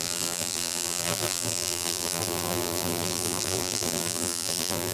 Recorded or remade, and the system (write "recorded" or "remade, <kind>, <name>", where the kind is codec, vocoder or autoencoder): remade, vocoder, BigVGAN v2